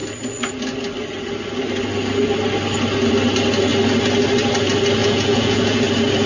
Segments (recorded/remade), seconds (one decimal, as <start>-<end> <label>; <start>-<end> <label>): 0.0-5.0 recorded; 5.0-5.8 remade; 5.8-6.3 recorded